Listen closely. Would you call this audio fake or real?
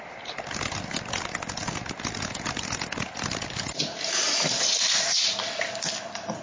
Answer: real